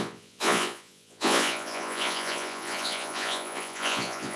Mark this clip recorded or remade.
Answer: remade